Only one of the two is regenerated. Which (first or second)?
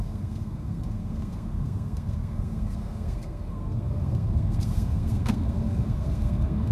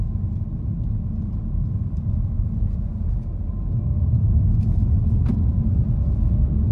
first